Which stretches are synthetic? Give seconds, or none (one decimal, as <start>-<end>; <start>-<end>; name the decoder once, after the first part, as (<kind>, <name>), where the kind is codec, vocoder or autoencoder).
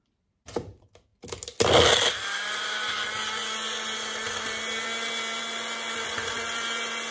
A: none